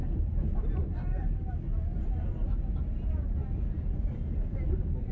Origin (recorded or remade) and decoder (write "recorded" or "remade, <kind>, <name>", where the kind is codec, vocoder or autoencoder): remade, vocoder, BigVGAN v2